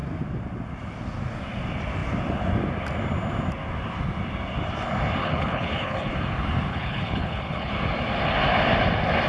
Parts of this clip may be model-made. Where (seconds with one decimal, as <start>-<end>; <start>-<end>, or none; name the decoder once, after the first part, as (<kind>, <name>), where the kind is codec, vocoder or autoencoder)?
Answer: 5.2-6.1 (codec, HILCodec); 6.7-7.7